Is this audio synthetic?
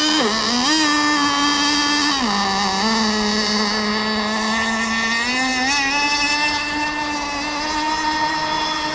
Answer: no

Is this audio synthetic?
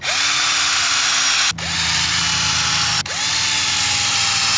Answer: no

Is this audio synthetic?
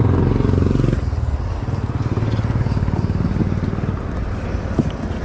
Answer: no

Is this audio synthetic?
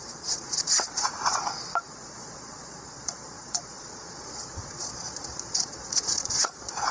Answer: yes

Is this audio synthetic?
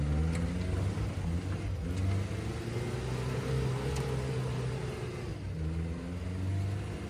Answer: no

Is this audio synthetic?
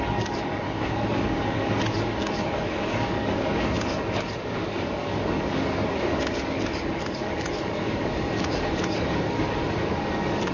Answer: yes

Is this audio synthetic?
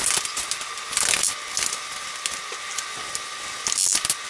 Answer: no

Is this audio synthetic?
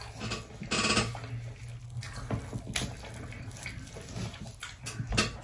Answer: no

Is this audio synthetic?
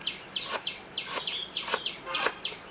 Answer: no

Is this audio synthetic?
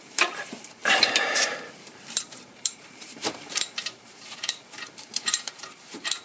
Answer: yes